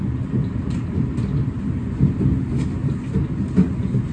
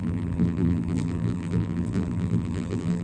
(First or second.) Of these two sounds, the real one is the first